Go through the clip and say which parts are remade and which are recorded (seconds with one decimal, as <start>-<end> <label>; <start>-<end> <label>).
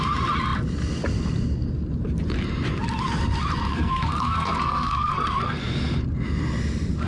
0.0-3.7 recorded; 3.7-5.6 remade; 5.6-7.1 recorded